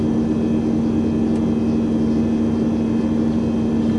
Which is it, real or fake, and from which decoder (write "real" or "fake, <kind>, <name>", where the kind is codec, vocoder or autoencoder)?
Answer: real